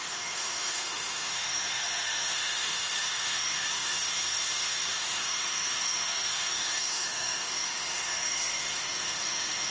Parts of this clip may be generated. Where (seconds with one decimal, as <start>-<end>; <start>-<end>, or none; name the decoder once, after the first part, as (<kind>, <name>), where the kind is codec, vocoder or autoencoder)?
0.0-9.7 (autoencoder, DAC-VAE)